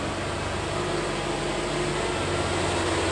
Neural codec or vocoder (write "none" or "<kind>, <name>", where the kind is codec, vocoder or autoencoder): none